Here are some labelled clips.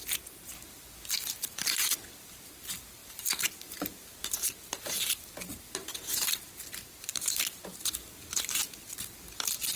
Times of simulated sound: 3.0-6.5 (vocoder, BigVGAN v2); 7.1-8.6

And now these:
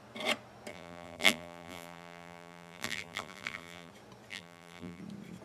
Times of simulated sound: 0.7-3.9 (vocoder, BigVGAN v2); 4.3-5.0

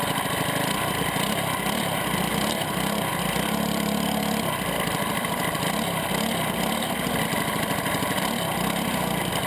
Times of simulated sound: 3.1-6.1 (vocoder, BigVGAN v2)

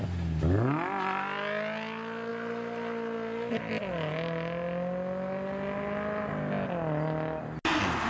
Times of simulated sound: none